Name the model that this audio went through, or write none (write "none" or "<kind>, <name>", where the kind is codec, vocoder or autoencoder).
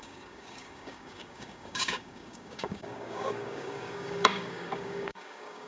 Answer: codec, DAC